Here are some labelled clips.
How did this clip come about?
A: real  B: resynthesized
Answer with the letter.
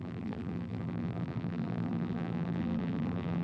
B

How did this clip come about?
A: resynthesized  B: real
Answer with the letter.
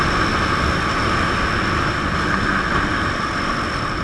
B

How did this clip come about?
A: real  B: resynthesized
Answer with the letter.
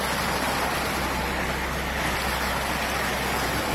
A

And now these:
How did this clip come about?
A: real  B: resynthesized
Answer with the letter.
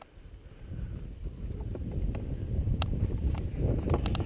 A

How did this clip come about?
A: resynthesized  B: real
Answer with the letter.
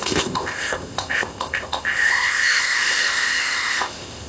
A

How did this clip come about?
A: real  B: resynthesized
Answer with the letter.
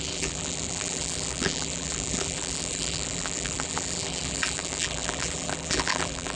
B